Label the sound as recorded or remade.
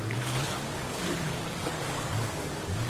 remade